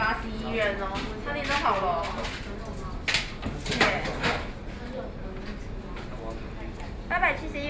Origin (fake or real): real